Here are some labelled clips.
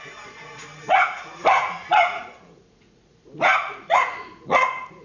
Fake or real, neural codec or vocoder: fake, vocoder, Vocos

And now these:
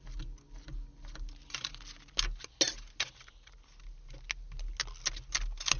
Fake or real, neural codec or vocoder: real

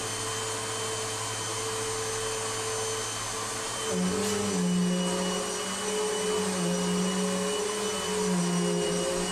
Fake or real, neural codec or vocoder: real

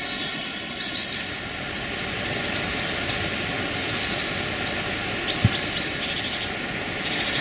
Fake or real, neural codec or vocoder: real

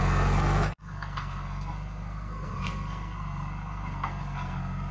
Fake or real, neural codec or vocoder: fake, codec, SNAC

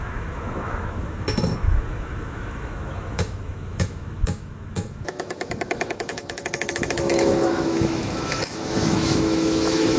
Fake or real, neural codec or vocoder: fake, autoencoder, DAC-VAE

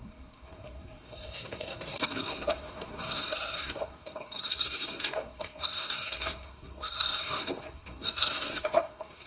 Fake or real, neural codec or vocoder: fake, codec, SNAC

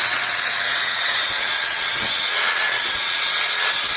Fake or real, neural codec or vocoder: fake, vocoder, WaveNeXt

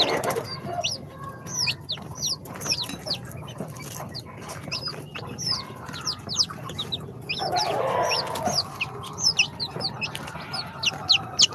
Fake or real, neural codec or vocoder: real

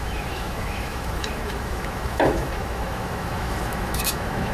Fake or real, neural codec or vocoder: fake, autoencoder, DAC-VAE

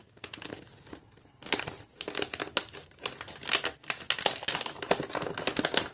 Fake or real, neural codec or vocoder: real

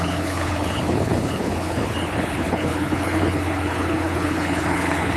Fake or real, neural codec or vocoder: fake, codec, HILCodec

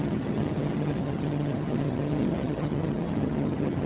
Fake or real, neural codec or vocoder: fake, vocoder, HiFi-GAN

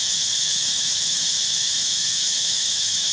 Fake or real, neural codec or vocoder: fake, autoencoder, DAC-VAE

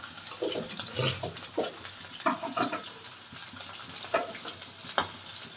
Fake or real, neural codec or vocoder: real